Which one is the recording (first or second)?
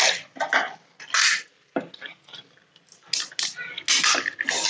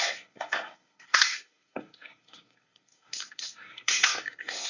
first